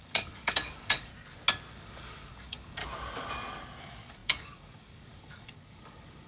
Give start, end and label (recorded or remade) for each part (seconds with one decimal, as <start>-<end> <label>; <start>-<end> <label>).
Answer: 0.0-1.1 remade; 1.1-1.7 recorded; 1.7-2.8 remade; 2.8-3.8 recorded; 3.8-6.3 remade